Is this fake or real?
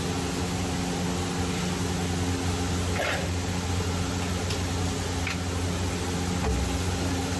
real